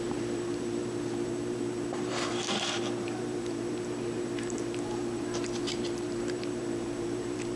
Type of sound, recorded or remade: remade